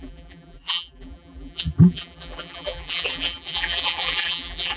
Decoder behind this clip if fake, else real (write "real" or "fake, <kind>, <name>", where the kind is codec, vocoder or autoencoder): fake, vocoder, BigVGAN v2